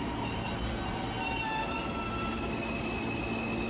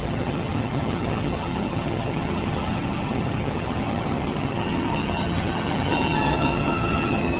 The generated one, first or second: second